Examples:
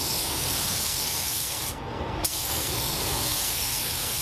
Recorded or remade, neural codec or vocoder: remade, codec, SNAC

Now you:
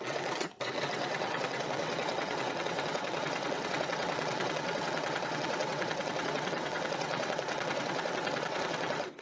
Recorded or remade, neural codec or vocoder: remade, vocoder, WaveNeXt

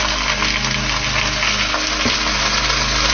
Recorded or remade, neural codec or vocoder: recorded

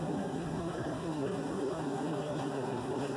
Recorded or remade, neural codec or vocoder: remade, codec, SNAC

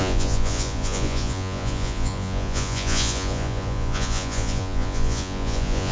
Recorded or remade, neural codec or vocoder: remade, vocoder, Vocos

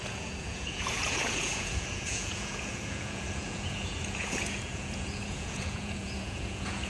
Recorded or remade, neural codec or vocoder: remade, vocoder, Vocos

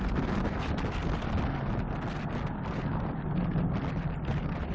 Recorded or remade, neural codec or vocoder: recorded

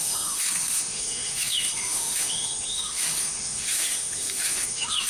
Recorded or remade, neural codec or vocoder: remade, autoencoder, DAC-VAE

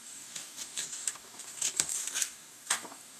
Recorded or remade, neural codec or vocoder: remade, codec, DAC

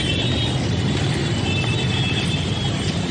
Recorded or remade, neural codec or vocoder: remade, vocoder, BigVGAN v2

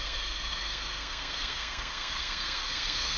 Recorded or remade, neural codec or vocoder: remade, codec, SNAC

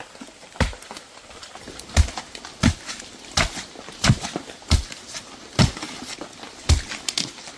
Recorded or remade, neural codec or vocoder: recorded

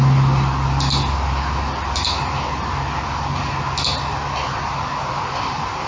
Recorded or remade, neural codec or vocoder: recorded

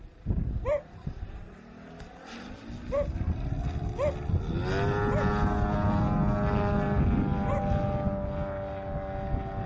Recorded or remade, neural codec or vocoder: recorded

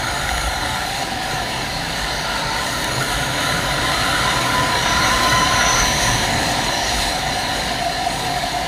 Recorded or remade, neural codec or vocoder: remade, codec, DAC